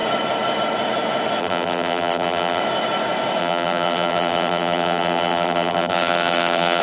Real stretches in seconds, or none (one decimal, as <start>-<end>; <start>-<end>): 0.0-1.4; 2.6-3.4